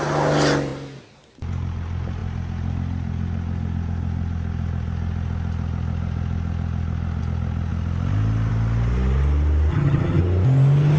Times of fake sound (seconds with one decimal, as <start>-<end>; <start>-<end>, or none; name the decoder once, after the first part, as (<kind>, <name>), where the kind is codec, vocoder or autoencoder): 9.7-10.2 (vocoder, HiFi-GAN)